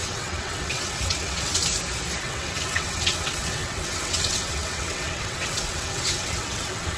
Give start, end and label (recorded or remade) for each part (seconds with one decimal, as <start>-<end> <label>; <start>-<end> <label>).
0.0-1.6 remade; 1.6-2.2 recorded; 2.2-7.0 remade